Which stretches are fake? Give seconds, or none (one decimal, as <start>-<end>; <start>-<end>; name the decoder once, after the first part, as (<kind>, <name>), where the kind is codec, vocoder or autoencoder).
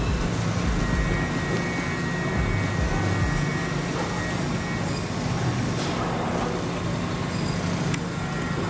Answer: none